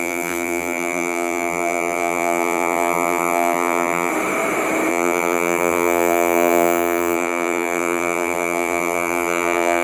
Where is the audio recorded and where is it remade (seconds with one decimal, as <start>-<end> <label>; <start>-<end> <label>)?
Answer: 0.0-4.1 remade; 4.1-4.9 recorded; 4.9-9.8 remade